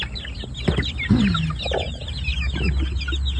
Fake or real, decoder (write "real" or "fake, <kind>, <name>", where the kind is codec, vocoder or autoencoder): real